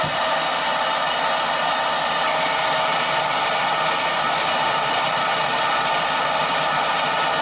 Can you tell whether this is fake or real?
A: real